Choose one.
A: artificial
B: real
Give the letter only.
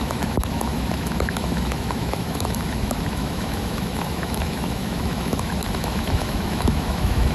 A